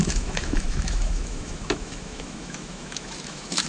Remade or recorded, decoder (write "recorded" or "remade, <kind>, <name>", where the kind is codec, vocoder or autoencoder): remade, autoencoder, DAC-VAE